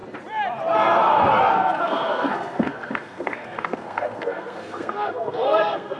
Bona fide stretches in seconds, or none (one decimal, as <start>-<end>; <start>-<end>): 0.0-1.5